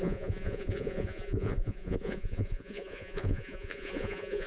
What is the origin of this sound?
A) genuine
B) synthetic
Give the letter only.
B